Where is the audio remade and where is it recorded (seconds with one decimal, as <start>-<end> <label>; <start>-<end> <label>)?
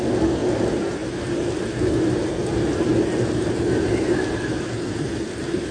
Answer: 0.0-2.7 recorded; 2.7-3.9 remade; 3.9-5.7 recorded